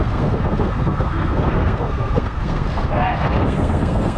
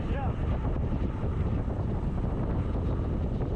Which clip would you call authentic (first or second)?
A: second